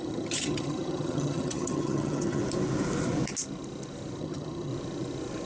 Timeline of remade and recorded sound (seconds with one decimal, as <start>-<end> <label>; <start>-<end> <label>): 0.0-2.4 remade; 2.4-4.2 recorded; 4.2-4.7 remade; 4.7-5.5 recorded